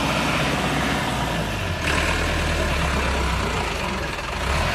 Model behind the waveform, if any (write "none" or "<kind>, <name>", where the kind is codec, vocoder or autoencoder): none